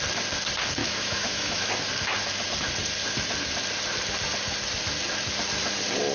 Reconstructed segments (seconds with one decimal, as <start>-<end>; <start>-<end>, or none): 0.8-1.7